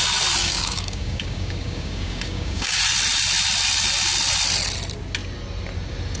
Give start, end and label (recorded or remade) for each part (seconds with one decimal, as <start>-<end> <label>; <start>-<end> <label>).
0.0-0.4 recorded; 0.4-2.8 remade; 2.8-6.2 recorded